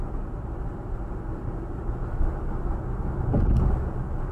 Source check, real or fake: real